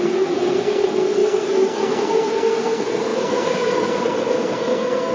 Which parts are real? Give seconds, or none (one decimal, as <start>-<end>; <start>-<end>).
none